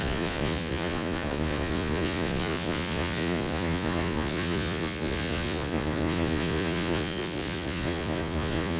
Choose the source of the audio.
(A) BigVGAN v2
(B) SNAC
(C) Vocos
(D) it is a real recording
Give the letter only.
C